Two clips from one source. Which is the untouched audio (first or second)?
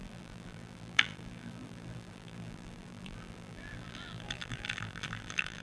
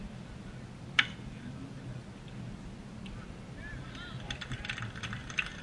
second